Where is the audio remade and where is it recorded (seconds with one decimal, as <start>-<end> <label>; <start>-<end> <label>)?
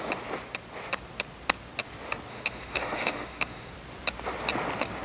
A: 0.0-2.3 recorded; 2.3-3.7 remade; 3.7-5.0 recorded